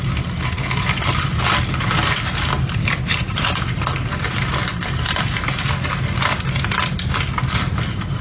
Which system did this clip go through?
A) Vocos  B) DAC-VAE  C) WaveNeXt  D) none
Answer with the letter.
D